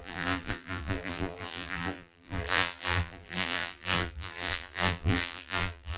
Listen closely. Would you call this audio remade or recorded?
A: remade